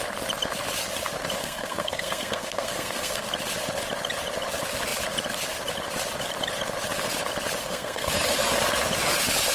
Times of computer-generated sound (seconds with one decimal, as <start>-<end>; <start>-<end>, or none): 1.4-3.3; 7.6-8.1